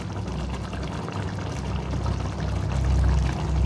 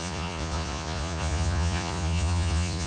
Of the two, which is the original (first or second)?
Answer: first